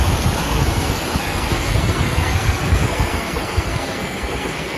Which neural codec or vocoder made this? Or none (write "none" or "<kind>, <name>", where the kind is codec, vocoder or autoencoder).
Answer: codec, SNAC